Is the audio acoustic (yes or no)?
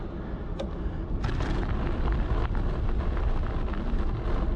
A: yes